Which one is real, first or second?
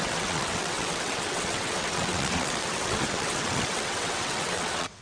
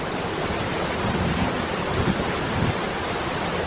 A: second